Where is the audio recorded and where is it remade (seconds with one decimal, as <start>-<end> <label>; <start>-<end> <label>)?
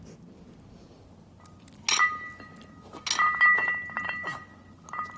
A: 0.0-5.2 recorded